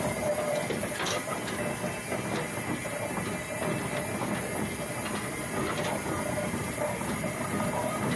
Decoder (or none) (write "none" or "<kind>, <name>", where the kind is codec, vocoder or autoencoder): none